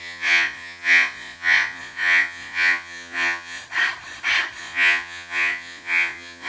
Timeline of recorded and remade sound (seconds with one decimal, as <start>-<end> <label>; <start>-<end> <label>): 0.0-3.6 remade; 3.6-4.6 recorded; 4.6-6.5 remade